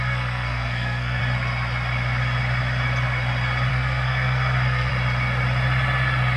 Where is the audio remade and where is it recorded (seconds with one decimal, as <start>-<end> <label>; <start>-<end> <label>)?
0.0-1.2 remade; 1.2-3.7 recorded; 3.7-4.9 remade; 4.9-6.4 recorded